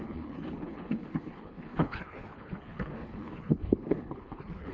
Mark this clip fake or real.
fake